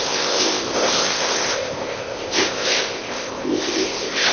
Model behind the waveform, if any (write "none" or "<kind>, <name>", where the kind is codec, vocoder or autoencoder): codec, ZipCodec